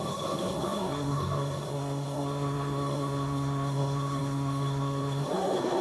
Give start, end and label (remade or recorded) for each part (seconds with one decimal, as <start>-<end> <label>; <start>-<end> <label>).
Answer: 0.0-5.8 remade